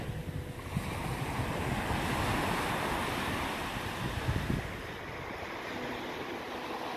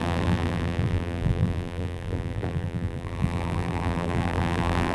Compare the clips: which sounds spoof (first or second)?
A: second